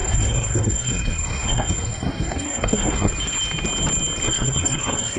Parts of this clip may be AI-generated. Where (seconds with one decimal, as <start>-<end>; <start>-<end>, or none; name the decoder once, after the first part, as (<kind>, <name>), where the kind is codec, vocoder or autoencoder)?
0.0-3.1 (codec, SNAC); 4.2-5.2